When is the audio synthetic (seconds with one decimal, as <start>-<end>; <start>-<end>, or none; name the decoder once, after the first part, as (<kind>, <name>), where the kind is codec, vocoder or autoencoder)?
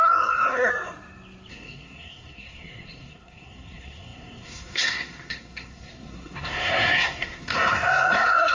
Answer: 0.0-0.7 (codec, SNAC); 1.5-8.5